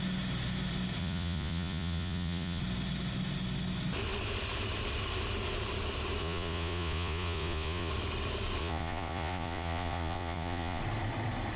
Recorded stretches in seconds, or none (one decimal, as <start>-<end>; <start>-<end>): 0.0-1.0; 2.6-6.2; 7.9-8.6; 10.8-11.6